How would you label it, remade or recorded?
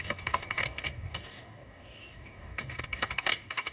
remade